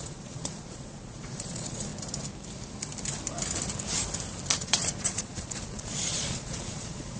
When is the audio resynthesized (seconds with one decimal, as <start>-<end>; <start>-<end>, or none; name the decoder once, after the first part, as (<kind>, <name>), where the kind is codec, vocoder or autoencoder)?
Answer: 0.0-1.9 (vocoder, Vocos); 4.6-7.2